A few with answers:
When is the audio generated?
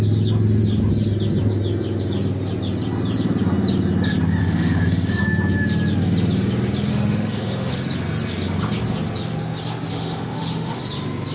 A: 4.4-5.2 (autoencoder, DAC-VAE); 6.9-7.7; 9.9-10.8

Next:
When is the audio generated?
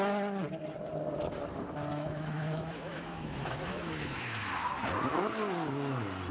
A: 1.9-4.5 (autoencoder, DAC-VAE)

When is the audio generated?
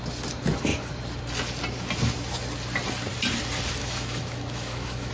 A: 3.8-5.1 (autoencoder, DAC-VAE)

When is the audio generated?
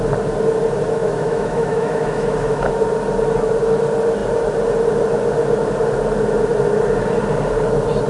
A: 1.0-2.7 (autoencoder, DAC-VAE)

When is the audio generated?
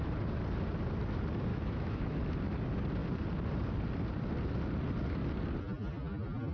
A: 1.5-2.2 (autoencoder, DAC-VAE)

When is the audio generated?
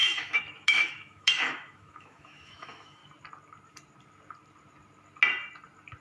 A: 0.0-3.0 (autoencoder, DAC-VAE)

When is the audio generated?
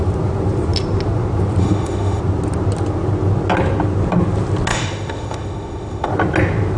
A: 1.6-2.2 (autoencoder, DAC-VAE); 4.7-6.1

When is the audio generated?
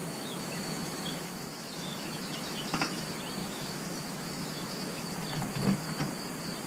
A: 0.0-3.0 (autoencoder, DAC-VAE); 3.4-5.1